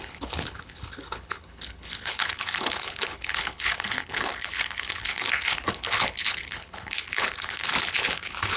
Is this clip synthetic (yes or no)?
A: yes